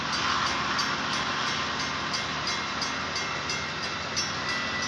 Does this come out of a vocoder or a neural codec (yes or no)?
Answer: no